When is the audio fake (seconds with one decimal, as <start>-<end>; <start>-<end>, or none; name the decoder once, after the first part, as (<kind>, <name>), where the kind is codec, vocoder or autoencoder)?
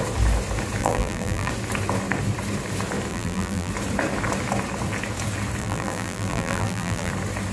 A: 0.8-1.5 (vocoder, BigVGAN v2); 3.1-3.7; 5.6-7.1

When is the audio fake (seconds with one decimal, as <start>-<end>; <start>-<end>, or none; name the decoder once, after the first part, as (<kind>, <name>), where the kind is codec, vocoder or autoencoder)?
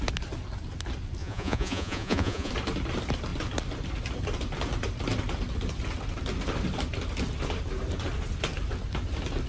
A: 1.2-2.5 (vocoder, Vocos)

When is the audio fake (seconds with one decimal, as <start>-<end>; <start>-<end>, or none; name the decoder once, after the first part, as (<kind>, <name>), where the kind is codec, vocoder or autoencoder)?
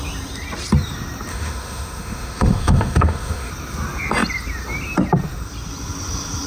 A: 1.3-3.5 (autoencoder, DAC-VAE)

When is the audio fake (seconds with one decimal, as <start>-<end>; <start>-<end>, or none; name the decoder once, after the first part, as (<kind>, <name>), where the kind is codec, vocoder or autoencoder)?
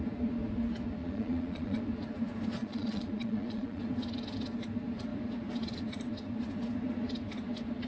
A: 1.0-1.8 (vocoder, Vocos); 2.6-3.8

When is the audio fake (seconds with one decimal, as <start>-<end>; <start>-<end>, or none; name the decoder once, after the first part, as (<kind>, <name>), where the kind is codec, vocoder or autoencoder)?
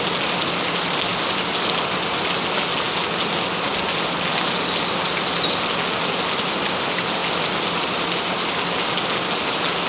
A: none